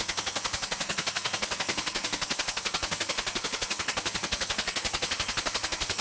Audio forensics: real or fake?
fake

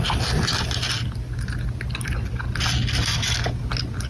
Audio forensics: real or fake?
real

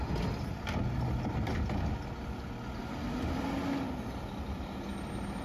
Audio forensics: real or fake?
real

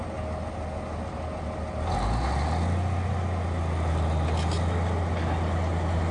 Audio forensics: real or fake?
real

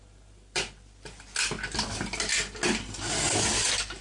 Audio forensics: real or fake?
real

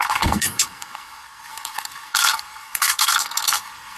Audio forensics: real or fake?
fake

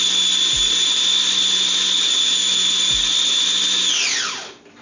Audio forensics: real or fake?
real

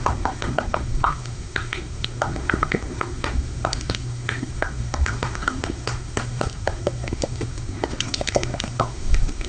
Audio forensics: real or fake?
fake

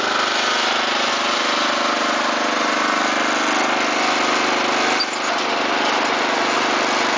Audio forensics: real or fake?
real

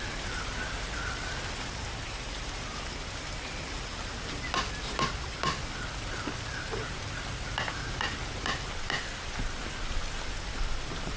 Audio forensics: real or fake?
real